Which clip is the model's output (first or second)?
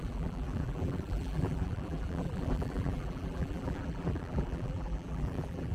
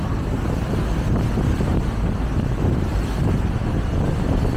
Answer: first